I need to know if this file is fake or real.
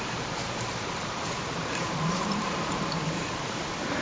fake